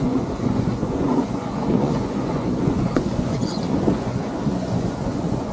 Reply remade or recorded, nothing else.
remade